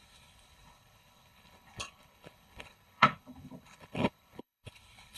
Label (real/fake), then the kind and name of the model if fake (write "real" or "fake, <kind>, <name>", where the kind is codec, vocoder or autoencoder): fake, codec, HILCodec